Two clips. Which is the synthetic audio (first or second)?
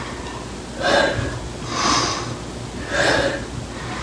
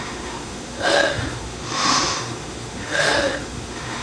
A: second